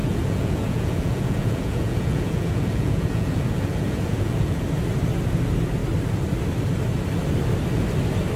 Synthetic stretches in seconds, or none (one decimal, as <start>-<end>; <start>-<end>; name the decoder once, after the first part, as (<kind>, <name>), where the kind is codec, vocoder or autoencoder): 0.0-4.6 (vocoder, Vocos)